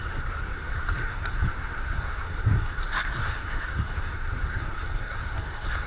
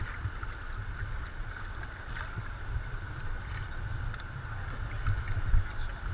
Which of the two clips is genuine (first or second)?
second